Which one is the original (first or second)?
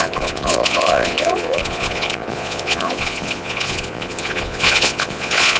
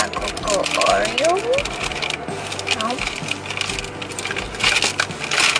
second